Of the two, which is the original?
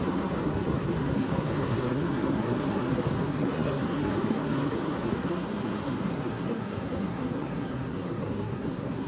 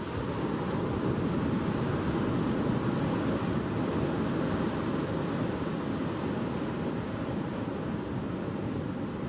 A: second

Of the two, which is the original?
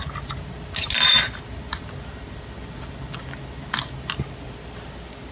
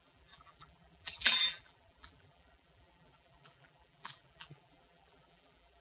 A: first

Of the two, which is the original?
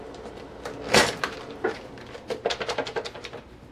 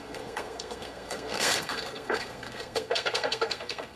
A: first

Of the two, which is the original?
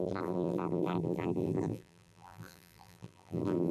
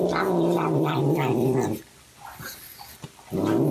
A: second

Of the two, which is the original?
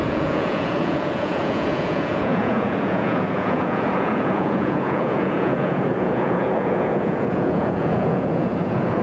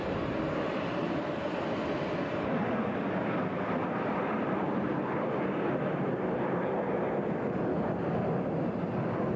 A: second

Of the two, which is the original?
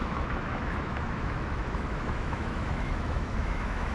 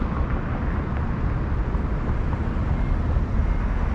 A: second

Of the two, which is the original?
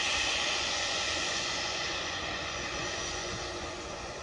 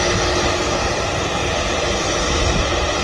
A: second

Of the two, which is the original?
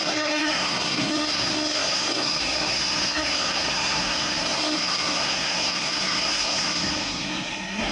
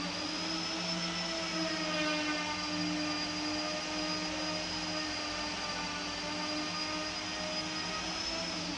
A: second